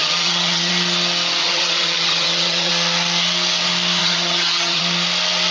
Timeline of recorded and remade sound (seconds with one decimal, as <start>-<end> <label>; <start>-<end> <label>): 0.0-0.7 remade; 0.7-1.4 recorded; 1.4-2.7 remade; 2.7-4.0 recorded; 4.0-4.8 remade; 4.8-5.5 recorded